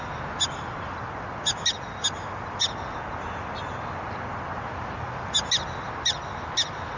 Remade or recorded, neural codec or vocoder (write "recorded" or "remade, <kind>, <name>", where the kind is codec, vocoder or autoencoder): recorded